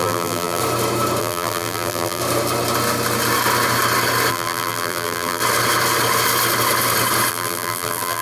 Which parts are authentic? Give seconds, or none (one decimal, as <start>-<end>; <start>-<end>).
0.6-1.2; 2.2-4.3; 5.4-7.3